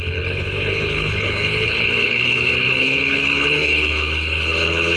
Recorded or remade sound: remade